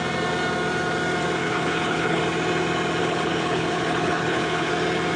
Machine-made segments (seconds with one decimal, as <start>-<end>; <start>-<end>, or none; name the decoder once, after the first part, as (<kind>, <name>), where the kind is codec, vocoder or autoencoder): 1.4-2.2 (codec, HILCodec); 3.0-4.7